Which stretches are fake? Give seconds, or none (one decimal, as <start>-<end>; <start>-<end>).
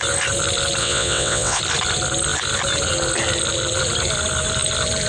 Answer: 0.8-1.6